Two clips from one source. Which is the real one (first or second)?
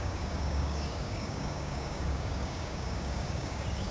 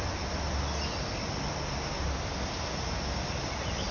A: second